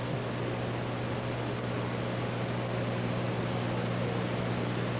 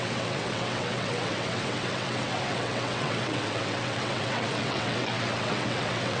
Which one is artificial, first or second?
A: second